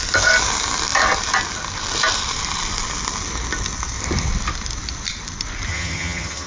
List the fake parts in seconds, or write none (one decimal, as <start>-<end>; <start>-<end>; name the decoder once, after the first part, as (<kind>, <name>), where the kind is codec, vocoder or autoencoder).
5.7-6.5 (vocoder, HiFi-GAN)

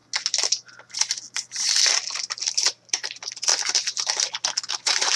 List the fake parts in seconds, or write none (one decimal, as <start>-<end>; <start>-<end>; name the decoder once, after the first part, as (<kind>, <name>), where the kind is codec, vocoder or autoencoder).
1.9-3.5 (vocoder, BigVGAN v2); 4.7-5.2

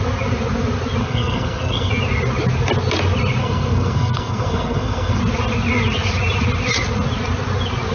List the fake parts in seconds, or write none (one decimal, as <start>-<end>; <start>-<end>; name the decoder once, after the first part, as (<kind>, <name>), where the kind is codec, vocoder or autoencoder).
1.0-1.9 (codec, SNAC); 3.4-5.2

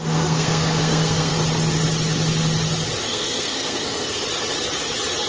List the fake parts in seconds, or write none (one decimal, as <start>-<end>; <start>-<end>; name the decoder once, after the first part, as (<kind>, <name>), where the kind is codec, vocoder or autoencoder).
0.0-1.3 (codec, SNAC); 3.0-4.2

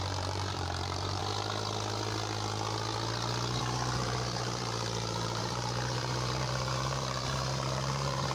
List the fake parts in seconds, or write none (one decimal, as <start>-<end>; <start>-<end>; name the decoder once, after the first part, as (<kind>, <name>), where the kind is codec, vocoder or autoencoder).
0.0-1.2 (vocoder, BigVGAN v2); 3.6-8.3